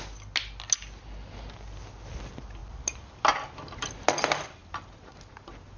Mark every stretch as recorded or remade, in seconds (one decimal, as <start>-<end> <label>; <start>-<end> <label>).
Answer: 0.0-5.8 recorded